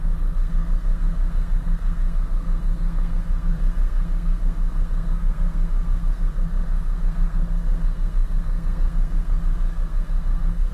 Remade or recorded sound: remade